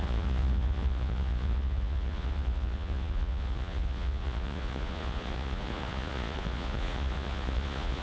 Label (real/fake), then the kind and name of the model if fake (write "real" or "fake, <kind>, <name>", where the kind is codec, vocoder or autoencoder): fake, vocoder, Vocos